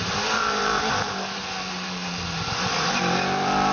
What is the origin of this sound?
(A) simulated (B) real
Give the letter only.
A